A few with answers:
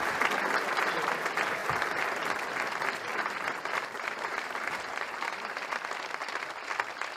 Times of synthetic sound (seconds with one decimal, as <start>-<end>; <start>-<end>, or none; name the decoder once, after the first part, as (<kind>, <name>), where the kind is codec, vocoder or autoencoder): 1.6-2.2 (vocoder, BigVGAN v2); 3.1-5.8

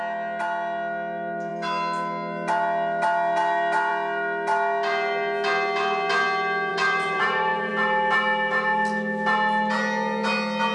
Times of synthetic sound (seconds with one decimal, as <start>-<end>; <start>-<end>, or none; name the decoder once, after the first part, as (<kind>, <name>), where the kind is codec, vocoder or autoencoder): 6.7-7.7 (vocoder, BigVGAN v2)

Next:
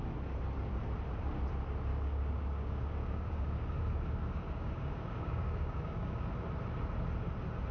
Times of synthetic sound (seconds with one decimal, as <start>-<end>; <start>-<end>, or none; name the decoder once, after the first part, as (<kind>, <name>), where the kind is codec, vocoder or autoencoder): 1.9-6.3 (codec, DAC)

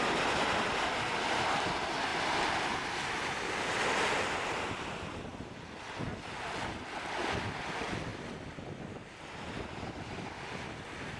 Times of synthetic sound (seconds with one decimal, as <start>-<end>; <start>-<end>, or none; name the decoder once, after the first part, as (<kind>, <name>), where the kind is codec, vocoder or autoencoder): 0.0-2.1 (vocoder, BigVGAN v2); 4.7-5.3; 7.6-8.1; 8.9-11.2